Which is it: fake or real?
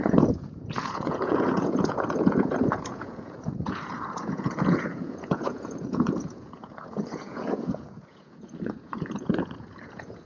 fake